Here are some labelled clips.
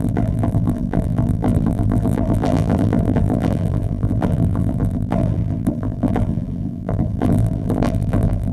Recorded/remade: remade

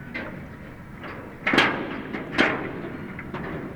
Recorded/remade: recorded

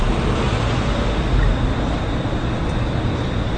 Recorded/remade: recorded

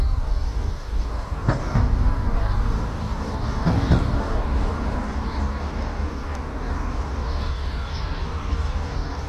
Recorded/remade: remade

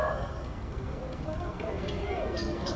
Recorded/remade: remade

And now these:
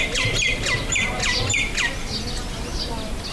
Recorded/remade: recorded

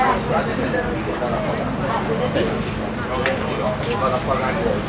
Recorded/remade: recorded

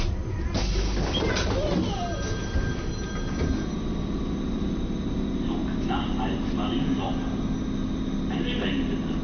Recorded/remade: recorded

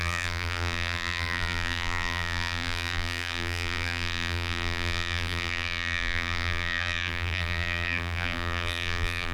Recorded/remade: remade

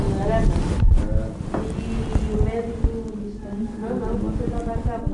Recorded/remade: recorded